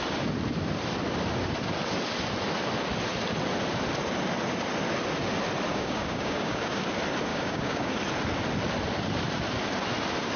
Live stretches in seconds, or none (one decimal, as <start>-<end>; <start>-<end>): 0.0-5.7; 6.8-7.3; 7.9-10.4